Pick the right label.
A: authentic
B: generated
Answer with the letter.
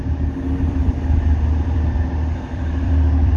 B